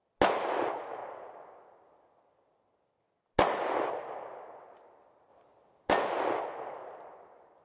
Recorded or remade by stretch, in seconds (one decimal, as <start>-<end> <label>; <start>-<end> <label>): 0.0-7.6 recorded